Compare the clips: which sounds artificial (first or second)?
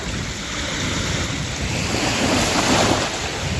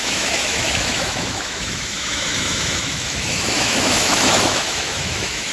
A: second